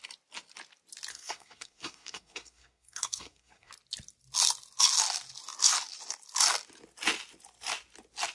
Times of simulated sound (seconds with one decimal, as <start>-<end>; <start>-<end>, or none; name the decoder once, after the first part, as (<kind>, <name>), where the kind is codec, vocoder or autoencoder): 1.1-3.7 (codec, SNAC)